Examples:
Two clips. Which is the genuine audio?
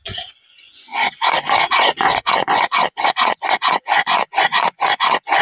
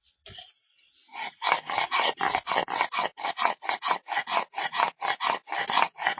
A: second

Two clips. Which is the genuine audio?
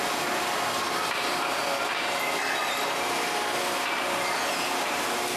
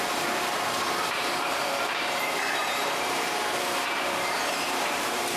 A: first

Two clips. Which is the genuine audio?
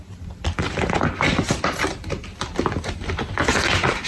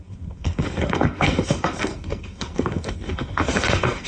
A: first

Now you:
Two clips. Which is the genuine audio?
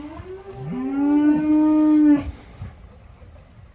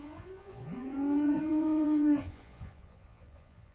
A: first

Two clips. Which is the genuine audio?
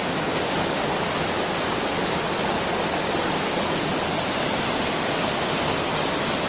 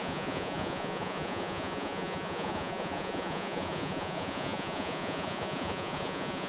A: first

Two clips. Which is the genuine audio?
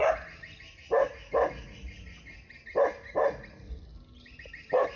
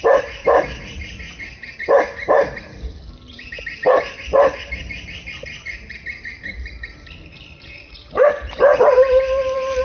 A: first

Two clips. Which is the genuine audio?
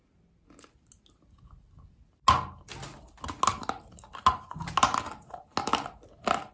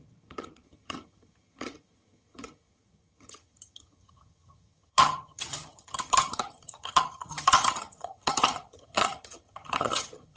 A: first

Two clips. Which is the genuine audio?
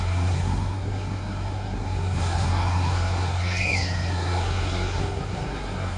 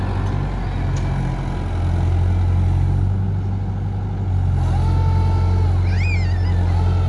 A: second